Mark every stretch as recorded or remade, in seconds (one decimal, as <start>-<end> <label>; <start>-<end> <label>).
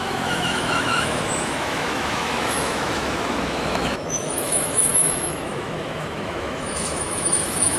0.0-7.8 remade